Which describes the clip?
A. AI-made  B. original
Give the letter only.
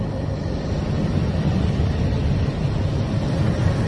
B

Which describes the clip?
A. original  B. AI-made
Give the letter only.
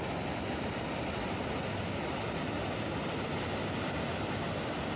A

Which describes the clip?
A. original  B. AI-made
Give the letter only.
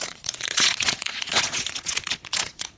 B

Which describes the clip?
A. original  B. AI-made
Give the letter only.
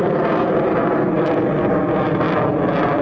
A